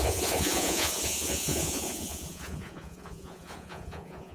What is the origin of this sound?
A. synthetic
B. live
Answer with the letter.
A